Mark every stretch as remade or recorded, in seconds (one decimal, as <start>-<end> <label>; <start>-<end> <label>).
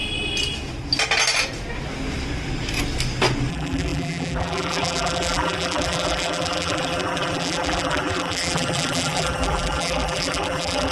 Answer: 0.0-3.5 recorded; 3.5-10.9 remade